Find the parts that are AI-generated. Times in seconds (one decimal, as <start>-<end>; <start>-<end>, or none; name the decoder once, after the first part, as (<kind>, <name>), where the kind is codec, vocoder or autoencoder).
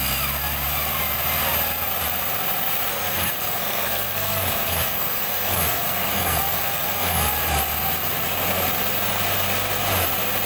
2.9-7.3 (codec, SNAC)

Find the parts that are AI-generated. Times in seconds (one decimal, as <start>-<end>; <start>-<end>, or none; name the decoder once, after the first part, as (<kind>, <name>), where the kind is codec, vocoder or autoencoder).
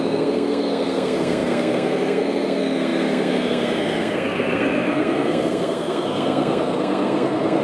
0.0-7.6 (codec, SNAC)